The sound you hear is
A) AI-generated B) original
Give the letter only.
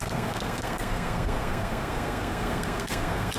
A